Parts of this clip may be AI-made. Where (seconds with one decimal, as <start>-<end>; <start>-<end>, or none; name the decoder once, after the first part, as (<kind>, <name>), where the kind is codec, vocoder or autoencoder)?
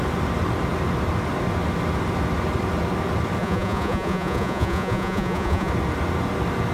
3.4-5.7 (vocoder, Vocos)